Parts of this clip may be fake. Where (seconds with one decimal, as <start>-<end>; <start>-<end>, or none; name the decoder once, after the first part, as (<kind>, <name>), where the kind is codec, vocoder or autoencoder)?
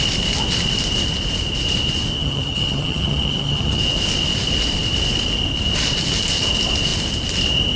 2.2-3.8 (vocoder, HiFi-GAN)